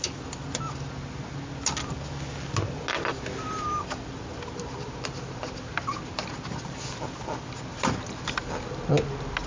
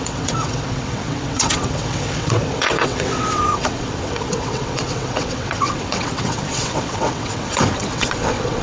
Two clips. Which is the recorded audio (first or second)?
first